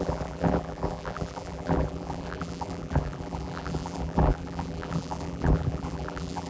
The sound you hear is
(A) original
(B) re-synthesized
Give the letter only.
B